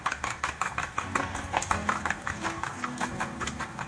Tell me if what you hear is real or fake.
fake